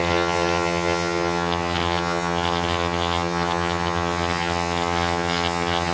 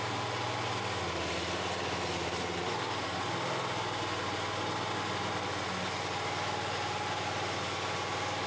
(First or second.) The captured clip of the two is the second